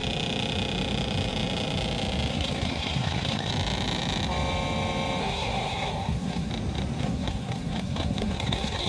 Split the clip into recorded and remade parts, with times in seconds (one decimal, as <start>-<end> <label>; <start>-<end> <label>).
0.0-2.3 recorded; 2.3-3.5 remade; 3.5-5.2 recorded; 5.2-6.5 remade; 6.5-7.0 recorded; 7.0-8.9 remade